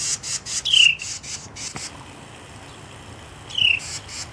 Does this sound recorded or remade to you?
recorded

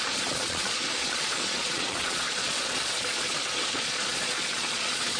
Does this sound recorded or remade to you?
remade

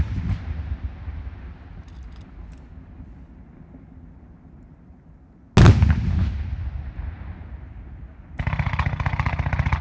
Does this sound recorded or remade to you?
recorded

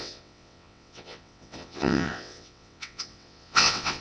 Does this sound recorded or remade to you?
remade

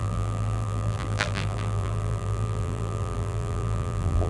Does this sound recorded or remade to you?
remade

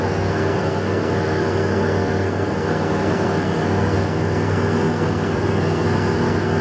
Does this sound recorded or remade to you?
remade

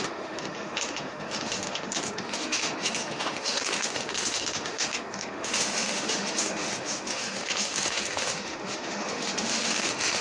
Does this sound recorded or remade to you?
remade